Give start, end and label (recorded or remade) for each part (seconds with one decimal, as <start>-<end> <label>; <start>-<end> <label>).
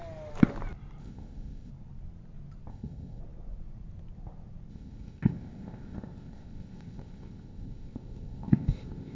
0.0-1.0 recorded; 1.0-1.7 remade; 1.7-2.7 recorded; 2.7-3.2 remade; 3.2-4.7 recorded; 4.7-9.2 remade